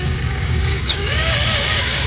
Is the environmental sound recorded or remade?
remade